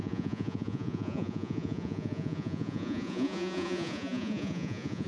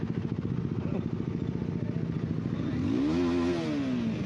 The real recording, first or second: second